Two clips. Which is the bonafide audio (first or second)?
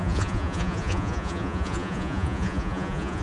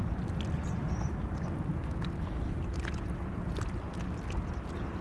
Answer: second